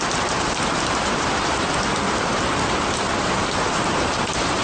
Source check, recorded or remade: recorded